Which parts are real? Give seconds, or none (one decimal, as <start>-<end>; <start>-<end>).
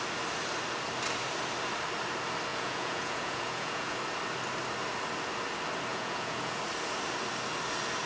0.0-2.5; 4.0-5.9; 6.6-8.1